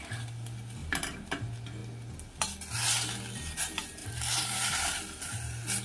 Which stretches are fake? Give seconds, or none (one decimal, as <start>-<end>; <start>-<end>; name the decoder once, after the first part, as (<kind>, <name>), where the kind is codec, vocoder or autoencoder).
0.8-1.3 (vocoder, BigVGAN v2); 4.0-5.0